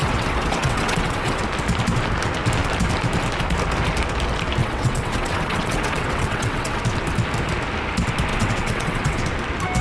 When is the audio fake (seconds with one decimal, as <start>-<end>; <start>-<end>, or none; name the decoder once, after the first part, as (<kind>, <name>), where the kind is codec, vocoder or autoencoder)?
0.0-1.4 (vocoder, WaveNeXt); 4.6-6.8; 8.3-9.2